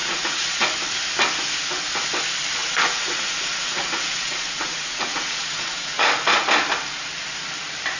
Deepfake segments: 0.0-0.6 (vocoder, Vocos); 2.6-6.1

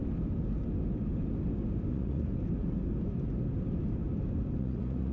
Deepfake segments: 1.9-2.3 (vocoder, Vocos); 4.6-5.1